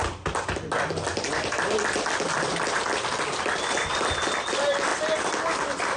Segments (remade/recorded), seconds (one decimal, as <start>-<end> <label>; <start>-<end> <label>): 0.0-6.0 recorded